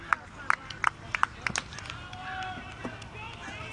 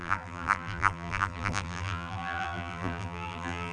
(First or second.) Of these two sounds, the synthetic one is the second